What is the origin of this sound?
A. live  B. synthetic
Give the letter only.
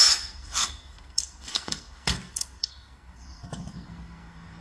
B